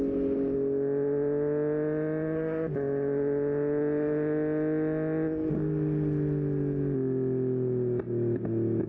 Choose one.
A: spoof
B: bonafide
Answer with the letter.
B